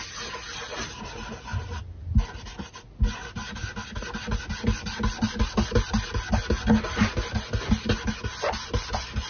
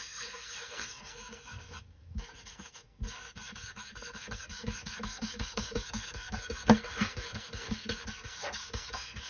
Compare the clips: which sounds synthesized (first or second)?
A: second